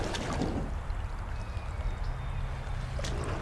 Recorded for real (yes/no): yes